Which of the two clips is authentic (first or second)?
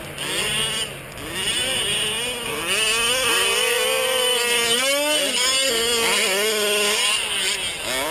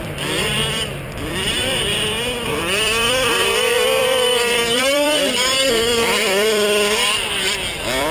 first